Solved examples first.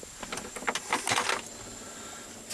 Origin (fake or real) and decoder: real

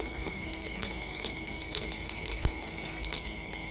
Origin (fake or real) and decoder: fake, codec, SNAC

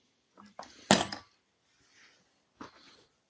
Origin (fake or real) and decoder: real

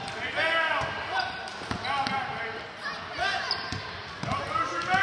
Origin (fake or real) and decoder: real